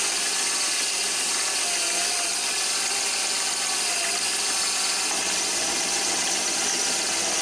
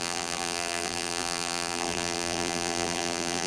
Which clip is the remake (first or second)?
second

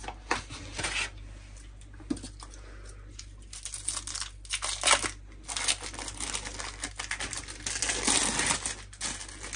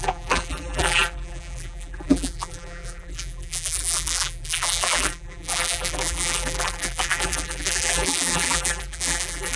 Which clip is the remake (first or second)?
second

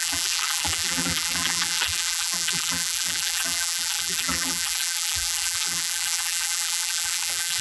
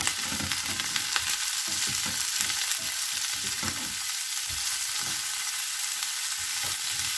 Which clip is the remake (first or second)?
first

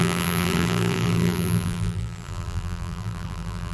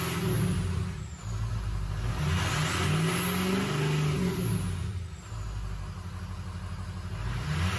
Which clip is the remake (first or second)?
first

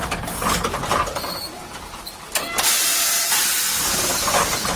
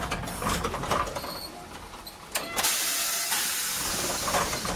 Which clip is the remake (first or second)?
first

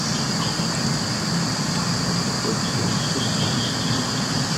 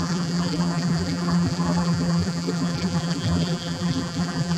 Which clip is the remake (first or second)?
second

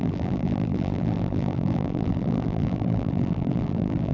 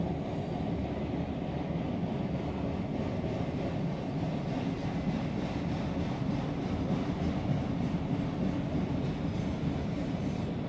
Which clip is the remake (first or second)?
first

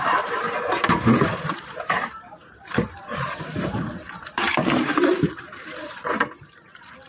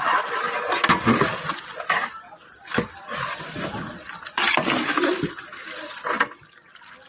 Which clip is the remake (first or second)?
first